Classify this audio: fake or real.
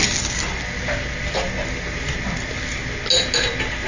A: real